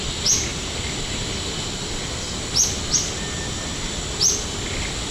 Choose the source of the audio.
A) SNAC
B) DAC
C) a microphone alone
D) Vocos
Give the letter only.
C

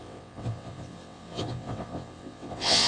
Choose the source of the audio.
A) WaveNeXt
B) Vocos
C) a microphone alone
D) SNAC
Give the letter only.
A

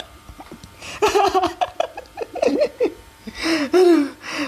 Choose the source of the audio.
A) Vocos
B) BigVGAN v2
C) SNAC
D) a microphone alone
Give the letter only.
B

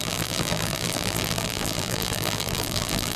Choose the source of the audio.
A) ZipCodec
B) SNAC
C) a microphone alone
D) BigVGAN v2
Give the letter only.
D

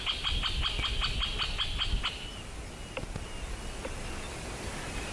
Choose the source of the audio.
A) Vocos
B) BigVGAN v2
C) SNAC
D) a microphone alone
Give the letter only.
D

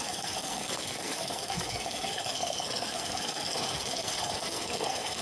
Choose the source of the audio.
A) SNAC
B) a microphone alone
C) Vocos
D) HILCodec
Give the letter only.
A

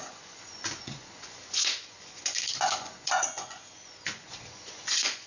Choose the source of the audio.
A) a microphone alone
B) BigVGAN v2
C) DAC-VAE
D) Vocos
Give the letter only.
D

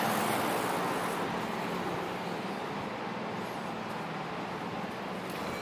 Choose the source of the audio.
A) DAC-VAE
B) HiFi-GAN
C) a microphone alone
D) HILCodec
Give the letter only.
C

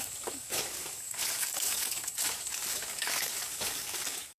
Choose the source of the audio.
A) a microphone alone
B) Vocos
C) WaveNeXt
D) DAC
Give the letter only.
D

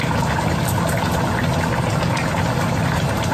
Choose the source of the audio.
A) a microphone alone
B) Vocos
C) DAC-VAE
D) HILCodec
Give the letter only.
A